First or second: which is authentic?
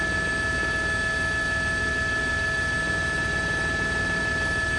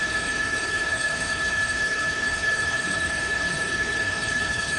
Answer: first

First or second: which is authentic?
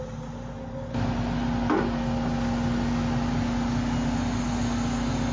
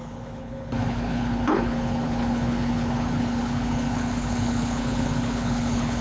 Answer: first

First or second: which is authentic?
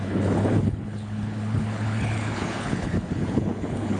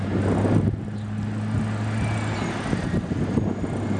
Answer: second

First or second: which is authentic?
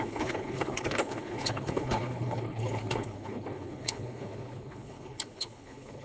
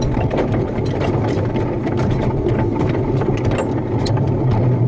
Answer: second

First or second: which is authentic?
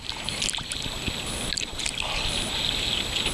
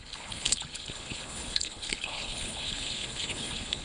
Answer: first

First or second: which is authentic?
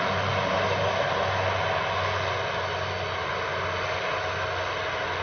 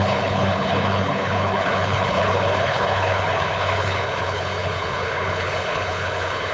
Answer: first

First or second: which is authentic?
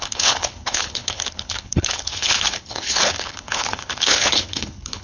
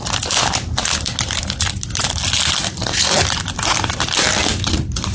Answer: second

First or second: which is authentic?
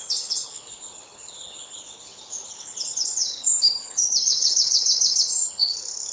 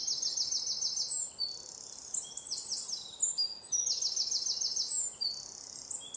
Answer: second